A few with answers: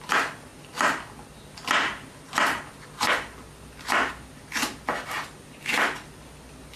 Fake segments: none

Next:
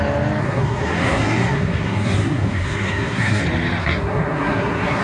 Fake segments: 0.4-3.4; 3.8-5.0

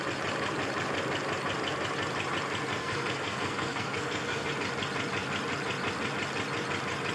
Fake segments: 2.8-4.5

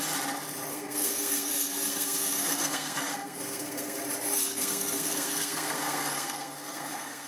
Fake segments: 0.7-4.0; 4.5-7.3

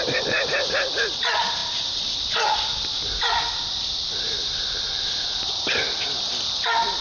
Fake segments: none

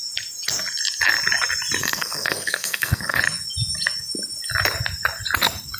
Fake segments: 1.8-3.2